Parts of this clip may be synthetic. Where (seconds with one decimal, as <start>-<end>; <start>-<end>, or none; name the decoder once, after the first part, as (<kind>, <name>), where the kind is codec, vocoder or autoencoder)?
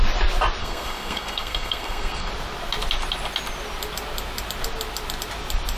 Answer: 0.6-2.3 (codec, SNAC)